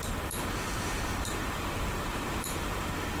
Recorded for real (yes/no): no